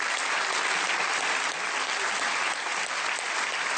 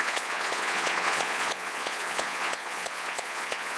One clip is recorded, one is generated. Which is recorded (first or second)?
first